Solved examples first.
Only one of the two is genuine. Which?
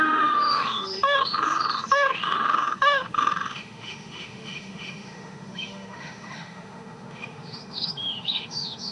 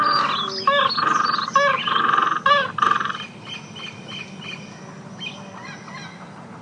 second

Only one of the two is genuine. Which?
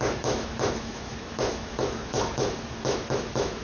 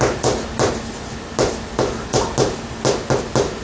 second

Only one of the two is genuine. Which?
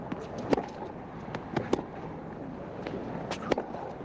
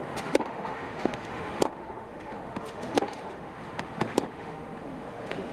first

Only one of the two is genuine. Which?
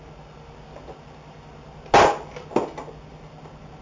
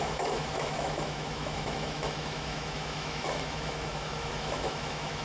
first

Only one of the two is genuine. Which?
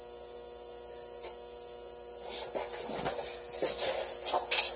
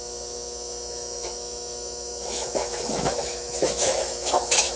first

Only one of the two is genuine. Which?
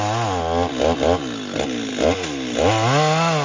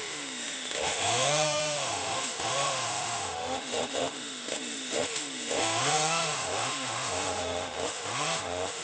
first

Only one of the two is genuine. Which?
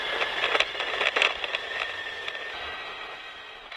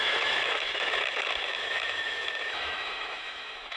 first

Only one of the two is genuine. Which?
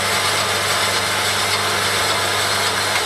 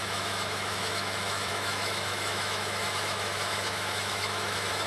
first